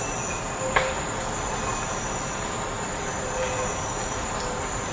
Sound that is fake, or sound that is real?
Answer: real